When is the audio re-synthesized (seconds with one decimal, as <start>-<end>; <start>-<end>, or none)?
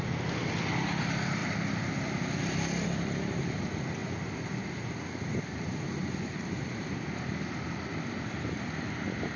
none